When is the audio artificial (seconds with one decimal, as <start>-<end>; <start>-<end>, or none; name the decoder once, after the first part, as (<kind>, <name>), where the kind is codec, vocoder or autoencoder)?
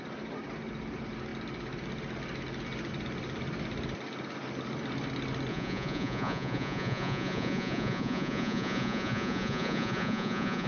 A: 5.5-10.7 (vocoder, Vocos)